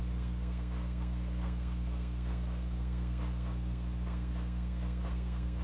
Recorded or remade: remade